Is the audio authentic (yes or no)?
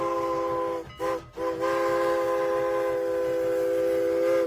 yes